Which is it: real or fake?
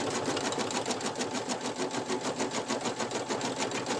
real